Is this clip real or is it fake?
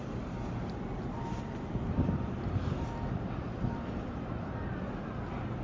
real